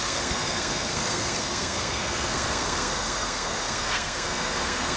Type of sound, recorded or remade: remade